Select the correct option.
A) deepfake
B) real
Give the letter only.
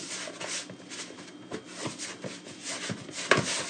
B